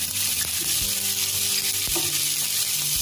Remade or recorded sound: recorded